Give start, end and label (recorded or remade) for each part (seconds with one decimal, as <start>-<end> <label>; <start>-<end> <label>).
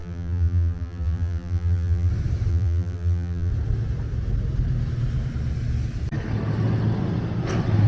0.0-2.1 remade; 2.1-2.5 recorded; 2.5-3.5 remade; 3.5-7.9 recorded